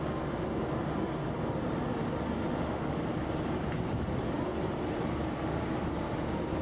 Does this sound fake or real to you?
real